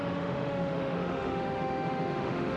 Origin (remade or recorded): remade